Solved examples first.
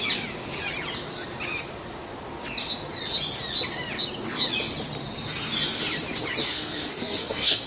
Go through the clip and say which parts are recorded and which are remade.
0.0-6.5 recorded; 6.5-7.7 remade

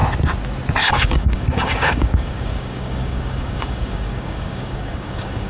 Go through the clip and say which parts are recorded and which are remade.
0.0-0.9 recorded; 0.9-5.5 remade

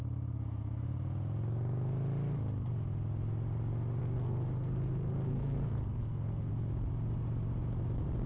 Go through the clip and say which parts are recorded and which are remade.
0.0-4.0 recorded; 4.0-6.5 remade; 6.5-8.3 recorded